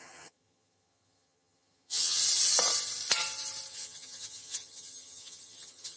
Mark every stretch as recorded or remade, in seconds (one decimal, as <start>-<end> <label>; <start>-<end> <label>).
0.0-2.2 remade; 2.2-3.7 recorded; 3.7-6.0 remade